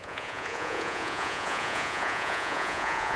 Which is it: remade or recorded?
remade